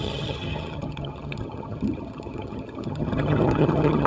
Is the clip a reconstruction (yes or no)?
yes